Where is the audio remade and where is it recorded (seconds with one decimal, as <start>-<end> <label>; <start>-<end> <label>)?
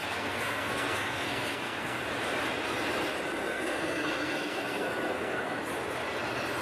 0.0-2.0 remade; 2.0-3.4 recorded; 3.4-5.6 remade; 5.6-6.6 recorded